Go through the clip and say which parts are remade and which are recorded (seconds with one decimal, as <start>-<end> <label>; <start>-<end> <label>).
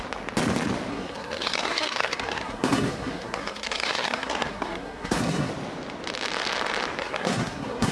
0.0-0.9 recorded; 0.9-5.5 remade; 5.5-7.0 recorded; 7.0-7.9 remade